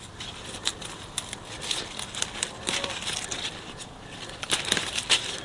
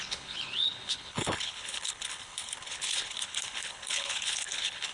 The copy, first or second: second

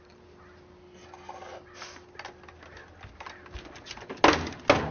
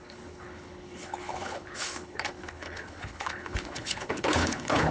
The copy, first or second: second